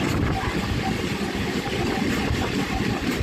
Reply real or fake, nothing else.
real